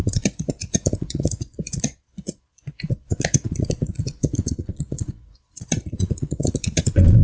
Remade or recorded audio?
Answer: remade